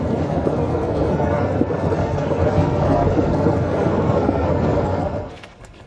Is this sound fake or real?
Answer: fake